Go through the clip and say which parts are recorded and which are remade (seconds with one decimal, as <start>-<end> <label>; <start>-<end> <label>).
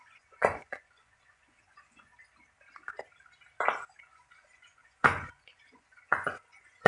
0.0-2.1 remade; 2.1-4.0 recorded; 4.0-6.9 remade